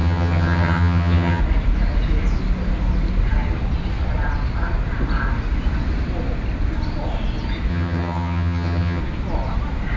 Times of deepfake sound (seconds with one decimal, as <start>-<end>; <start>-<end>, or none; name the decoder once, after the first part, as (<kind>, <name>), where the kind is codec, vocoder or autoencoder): 0.0-1.4 (vocoder, HiFi-GAN); 7.7-9.0

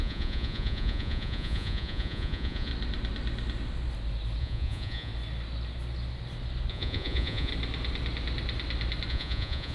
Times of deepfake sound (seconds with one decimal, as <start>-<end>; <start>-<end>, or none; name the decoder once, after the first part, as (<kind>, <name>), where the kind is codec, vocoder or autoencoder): 0.0-2.7 (vocoder, Vocos); 4.4-5.1; 6.7-7.5; 9.1-9.7